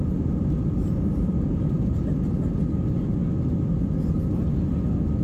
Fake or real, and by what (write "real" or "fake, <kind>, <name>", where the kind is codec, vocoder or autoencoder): real